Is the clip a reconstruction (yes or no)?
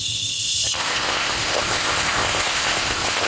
yes